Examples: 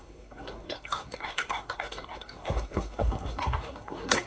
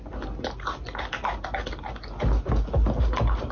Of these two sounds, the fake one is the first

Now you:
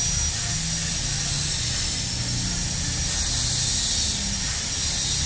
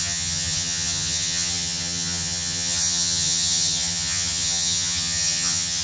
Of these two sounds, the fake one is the second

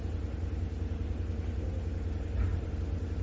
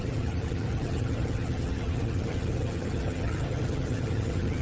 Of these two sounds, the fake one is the second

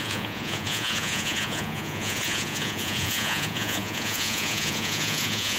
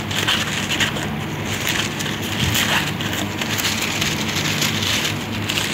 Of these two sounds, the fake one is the first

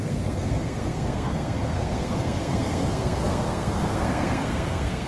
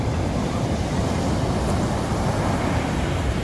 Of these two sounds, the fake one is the first